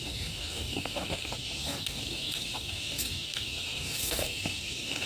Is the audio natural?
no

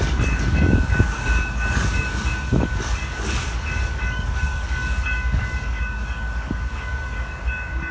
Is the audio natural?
no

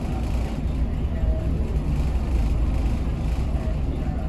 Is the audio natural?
yes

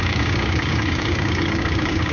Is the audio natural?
no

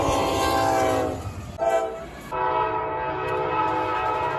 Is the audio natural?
yes